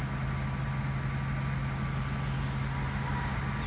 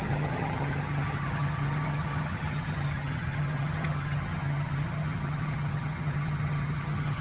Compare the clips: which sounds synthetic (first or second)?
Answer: second